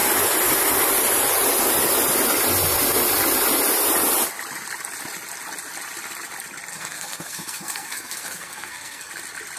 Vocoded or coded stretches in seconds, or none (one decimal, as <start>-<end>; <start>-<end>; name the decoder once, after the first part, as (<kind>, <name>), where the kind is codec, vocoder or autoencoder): 6.7-9.1 (codec, SNAC)